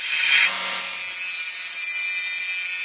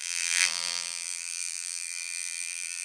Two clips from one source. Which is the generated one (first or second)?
second